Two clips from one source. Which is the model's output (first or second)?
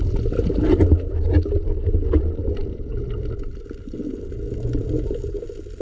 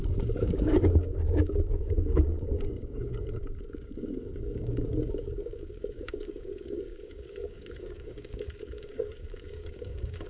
second